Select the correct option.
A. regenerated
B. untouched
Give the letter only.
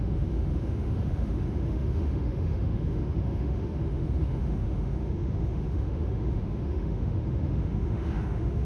A